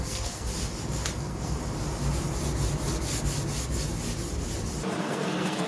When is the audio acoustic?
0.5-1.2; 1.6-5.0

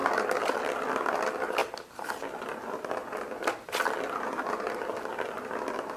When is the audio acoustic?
0.0-6.0

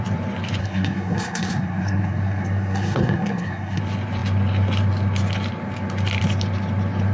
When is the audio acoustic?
0.0-0.6; 3.8-7.1